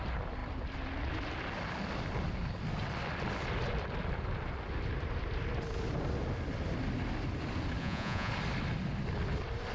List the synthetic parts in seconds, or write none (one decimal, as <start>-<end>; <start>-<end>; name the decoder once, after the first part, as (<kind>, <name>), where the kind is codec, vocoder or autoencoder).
7.8-8.3 (vocoder, Vocos)